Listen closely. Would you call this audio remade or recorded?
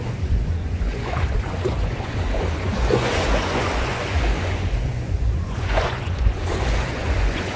remade